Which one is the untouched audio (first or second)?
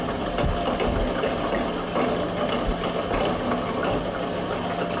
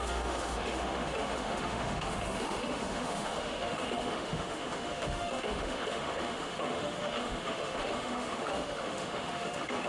first